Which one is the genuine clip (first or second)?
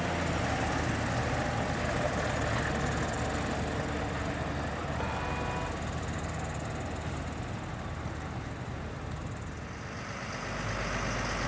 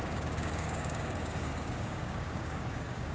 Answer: first